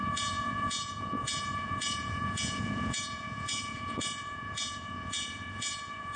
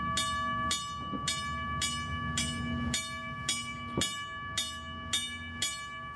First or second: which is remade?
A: first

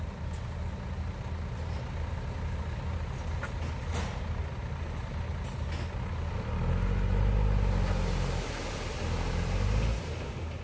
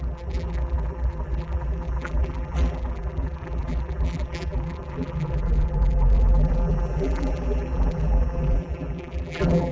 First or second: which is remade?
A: second